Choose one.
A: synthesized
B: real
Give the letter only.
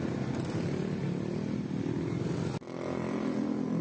B